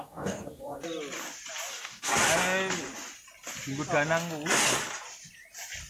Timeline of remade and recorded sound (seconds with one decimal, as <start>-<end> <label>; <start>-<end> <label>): 0.0-0.8 remade; 0.8-1.7 recorded; 1.7-2.1 remade; 2.1-5.9 recorded